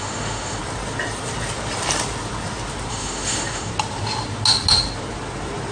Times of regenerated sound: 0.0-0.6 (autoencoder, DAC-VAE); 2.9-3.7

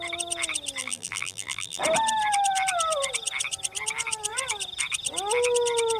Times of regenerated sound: 0.8-1.8 (vocoder, BigVGAN v2)

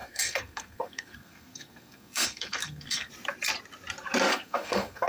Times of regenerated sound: 0.0-3.1 (codec, SNAC); 4.3-5.1

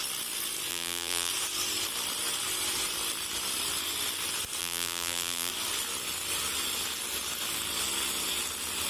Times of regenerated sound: 0.7-1.3 (vocoder, BigVGAN v2); 4.6-5.5

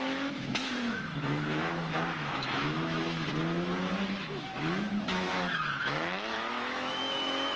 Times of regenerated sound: 0.0-3.3 (autoencoder, DAC-VAE); 4.2-7.6

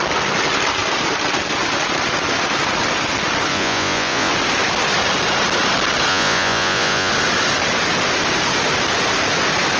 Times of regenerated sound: 3.5-4.3 (vocoder, Vocos); 6.1-7.1

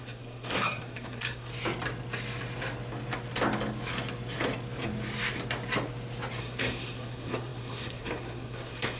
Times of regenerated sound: 0.0-1.5 (codec, SNAC); 6.4-9.0

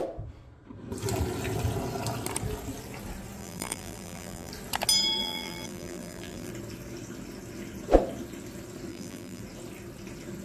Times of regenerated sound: 3.4-4.5 (vocoder, BigVGAN v2); 5.2-6.5; 8.9-9.4